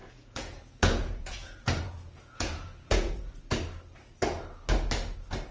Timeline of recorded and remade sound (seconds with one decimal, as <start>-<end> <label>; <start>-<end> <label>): 0.0-3.3 remade; 3.3-5.5 recorded